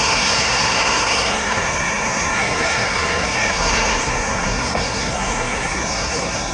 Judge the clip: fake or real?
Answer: fake